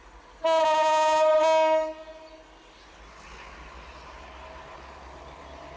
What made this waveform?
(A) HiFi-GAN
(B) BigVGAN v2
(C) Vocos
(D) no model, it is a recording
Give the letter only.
D